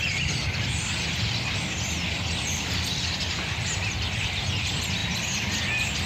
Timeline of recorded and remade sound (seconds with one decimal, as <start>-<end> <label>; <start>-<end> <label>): 0.0-6.1 recorded